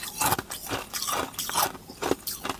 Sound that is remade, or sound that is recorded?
recorded